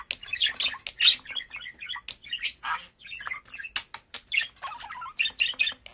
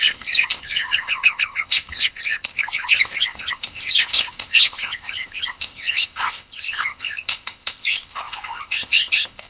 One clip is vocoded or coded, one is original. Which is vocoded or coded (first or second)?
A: second